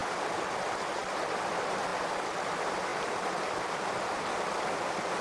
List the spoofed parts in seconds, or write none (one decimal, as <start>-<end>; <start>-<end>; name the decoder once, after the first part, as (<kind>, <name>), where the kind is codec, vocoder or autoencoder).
0.0-0.5 (vocoder, BigVGAN v2); 2.9-5.2